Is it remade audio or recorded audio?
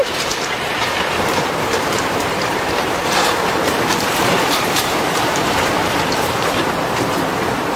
remade